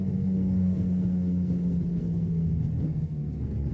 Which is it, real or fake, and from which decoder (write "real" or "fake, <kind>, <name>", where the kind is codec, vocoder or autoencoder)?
fake, codec, SNAC